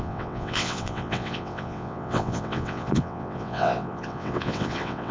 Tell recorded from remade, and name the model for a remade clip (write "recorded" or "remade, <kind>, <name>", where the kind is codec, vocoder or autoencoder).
remade, vocoder, WaveNeXt